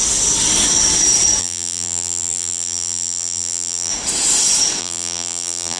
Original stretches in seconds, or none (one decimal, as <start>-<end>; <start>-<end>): 0.0-1.4; 3.9-4.8